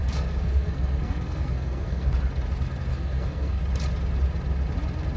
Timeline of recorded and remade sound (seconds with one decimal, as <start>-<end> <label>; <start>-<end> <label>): 0.0-2.1 remade; 2.1-2.9 recorded; 2.9-3.6 remade; 3.6-5.2 recorded